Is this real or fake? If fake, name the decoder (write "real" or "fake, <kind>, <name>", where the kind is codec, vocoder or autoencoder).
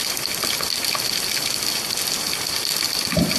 real